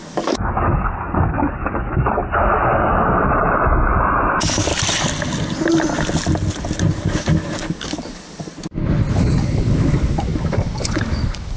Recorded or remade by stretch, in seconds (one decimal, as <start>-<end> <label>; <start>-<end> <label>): 0.0-2.2 remade; 2.2-4.3 recorded; 4.3-4.7 remade; 4.7-7.0 recorded; 7.0-8.5 remade; 8.5-9.1 recorded; 9.1-11.6 remade

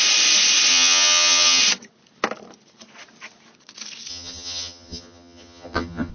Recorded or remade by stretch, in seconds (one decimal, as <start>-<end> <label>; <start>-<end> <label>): 0.0-0.7 recorded; 0.7-1.6 remade; 1.6-4.1 recorded; 4.1-6.1 remade

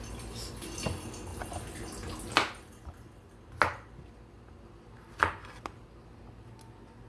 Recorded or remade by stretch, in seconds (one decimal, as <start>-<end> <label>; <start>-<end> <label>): 0.0-7.1 recorded